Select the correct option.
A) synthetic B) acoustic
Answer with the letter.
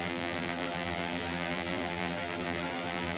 A